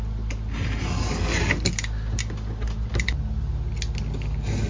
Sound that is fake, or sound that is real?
real